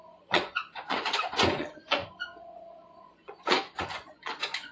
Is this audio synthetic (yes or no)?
yes